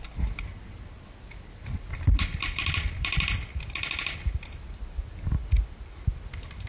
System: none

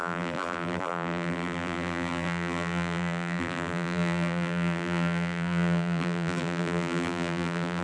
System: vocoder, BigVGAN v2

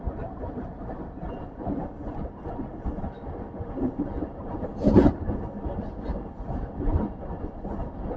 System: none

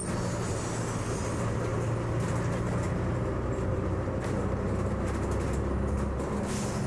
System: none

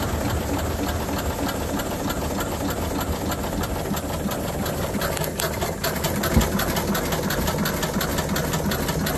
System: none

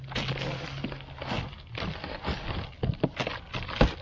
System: none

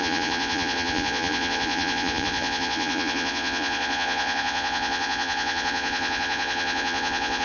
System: vocoder, Vocos